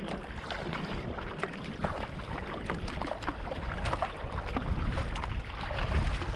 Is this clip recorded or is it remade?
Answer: remade